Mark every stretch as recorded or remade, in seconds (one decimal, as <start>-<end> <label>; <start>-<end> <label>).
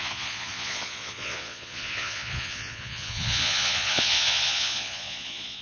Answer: 0.0-5.6 remade